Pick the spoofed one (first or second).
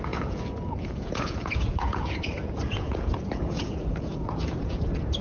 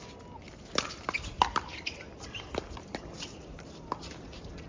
first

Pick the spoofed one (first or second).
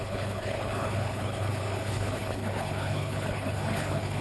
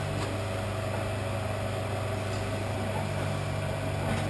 first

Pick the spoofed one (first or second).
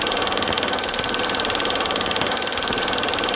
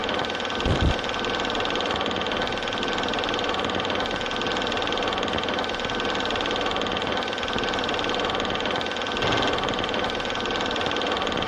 first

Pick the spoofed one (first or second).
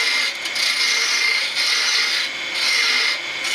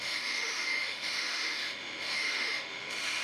second